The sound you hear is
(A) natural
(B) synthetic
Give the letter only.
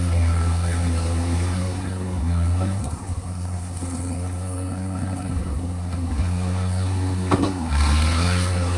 B